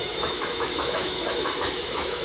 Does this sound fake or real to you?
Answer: fake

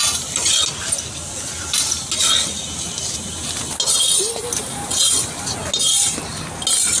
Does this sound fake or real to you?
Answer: real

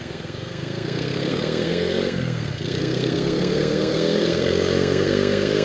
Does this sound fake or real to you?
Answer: fake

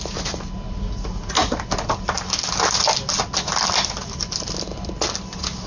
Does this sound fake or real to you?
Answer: real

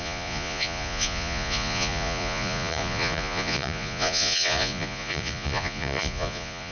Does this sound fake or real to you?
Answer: fake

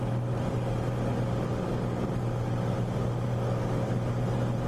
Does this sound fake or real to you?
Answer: real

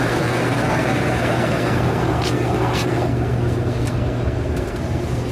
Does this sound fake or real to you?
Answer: fake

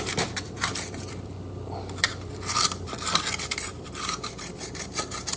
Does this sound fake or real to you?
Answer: fake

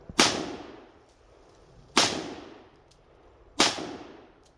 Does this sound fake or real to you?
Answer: real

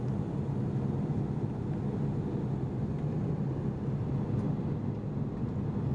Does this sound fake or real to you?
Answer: real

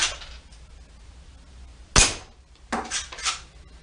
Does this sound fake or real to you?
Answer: real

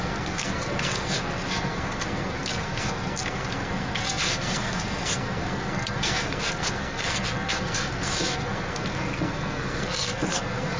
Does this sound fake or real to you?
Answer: fake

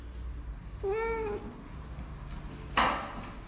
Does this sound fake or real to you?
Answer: real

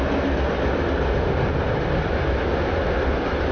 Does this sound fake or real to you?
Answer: fake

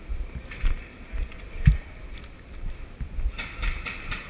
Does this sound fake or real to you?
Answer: real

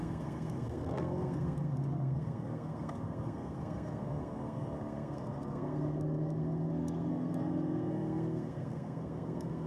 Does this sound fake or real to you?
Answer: fake